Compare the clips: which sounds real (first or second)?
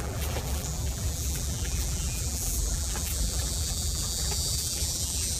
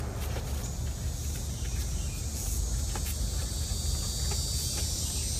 second